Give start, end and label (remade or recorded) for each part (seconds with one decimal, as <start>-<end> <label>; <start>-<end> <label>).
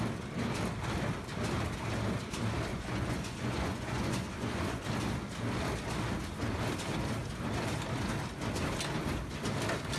0.0-2.7 recorded; 2.7-4.8 remade; 4.8-10.0 recorded